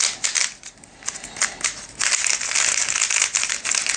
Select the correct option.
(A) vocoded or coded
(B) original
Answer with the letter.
B